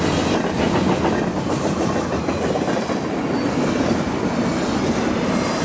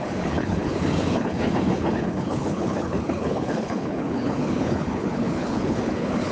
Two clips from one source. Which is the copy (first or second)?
second